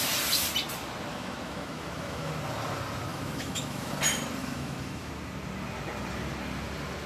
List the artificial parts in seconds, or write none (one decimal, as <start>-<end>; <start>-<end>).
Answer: 1.1-2.3; 3.1-3.9; 4.4-5.1